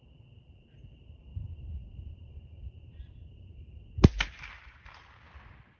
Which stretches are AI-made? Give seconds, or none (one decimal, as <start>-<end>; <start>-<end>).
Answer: 1.3-3.5; 4.3-5.0